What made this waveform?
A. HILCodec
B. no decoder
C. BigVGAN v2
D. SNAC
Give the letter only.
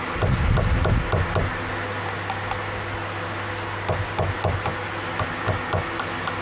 B